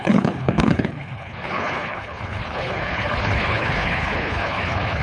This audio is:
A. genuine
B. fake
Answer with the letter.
B